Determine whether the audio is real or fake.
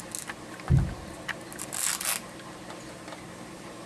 real